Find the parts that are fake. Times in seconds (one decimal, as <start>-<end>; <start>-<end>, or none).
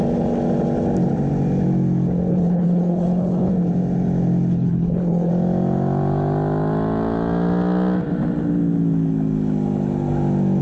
2.3-3.5; 4.5-5.3